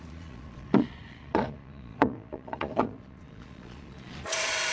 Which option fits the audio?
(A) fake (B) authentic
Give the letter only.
A